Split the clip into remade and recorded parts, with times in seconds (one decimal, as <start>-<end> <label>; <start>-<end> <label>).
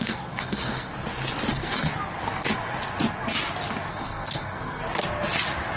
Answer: 0.0-0.9 remade; 0.9-1.5 recorded; 1.5-1.9 remade; 1.9-3.9 recorded; 3.9-4.8 remade; 4.8-5.8 recorded